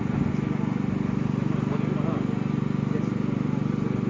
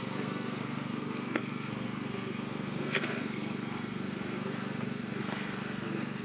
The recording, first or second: first